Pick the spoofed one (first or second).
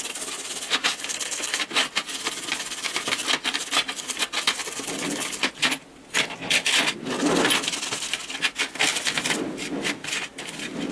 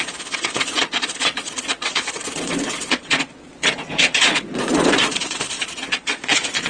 second